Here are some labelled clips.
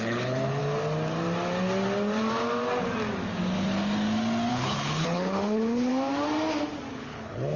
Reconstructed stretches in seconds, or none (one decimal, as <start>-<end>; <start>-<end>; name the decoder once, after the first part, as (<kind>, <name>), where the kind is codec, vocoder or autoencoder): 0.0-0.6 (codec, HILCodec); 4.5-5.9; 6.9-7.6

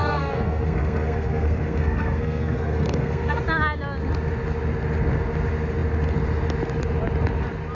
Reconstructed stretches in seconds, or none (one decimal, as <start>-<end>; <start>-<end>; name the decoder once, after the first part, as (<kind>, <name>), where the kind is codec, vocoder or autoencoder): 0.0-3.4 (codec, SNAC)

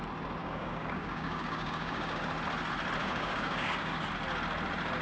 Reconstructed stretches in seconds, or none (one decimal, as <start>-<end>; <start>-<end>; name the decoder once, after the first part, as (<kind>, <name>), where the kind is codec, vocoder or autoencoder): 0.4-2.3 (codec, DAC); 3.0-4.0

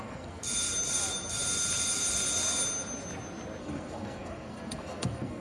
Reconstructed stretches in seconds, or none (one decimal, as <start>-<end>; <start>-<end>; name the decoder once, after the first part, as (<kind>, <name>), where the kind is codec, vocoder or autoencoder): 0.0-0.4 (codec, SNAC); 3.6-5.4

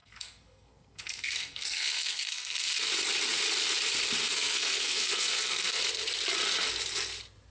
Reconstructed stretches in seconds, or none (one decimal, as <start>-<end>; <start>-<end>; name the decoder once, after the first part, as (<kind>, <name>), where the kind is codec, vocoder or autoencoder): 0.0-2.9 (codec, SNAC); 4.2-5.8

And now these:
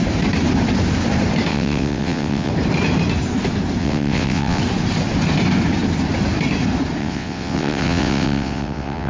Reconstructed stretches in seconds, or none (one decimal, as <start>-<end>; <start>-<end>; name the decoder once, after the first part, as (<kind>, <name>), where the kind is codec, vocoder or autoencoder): 1.5-2.5 (vocoder, WaveNeXt); 3.8-4.6; 7.0-9.1